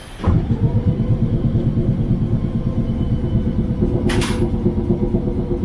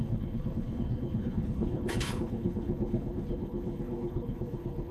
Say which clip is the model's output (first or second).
second